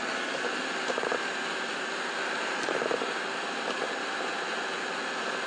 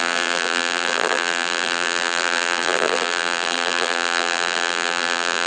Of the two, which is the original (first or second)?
first